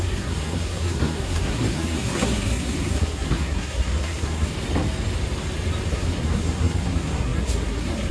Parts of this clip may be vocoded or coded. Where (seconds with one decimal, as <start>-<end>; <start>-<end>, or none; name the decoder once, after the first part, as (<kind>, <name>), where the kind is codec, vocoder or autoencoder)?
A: 0.0-4.5 (codec, SNAC); 5.9-8.1